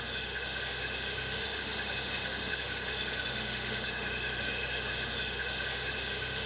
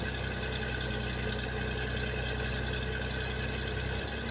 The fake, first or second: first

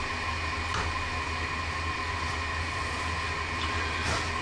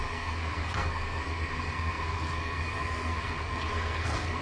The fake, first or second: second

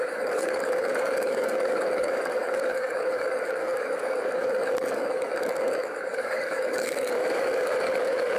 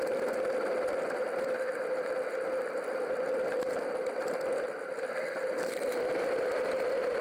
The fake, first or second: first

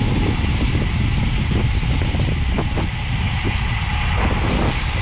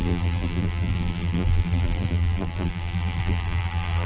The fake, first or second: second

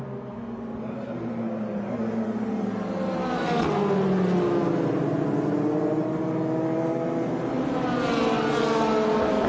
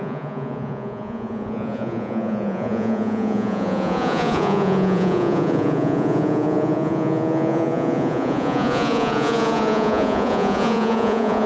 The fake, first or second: second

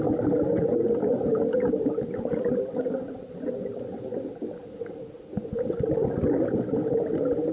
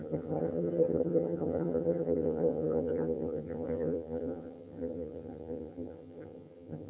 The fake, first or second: second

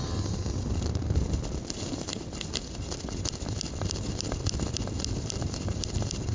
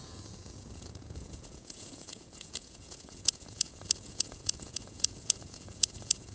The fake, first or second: second